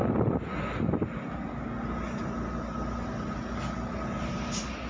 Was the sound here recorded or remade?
recorded